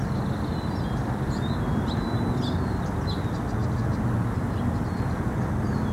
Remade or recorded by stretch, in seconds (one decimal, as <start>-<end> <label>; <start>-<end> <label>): 0.0-5.9 recorded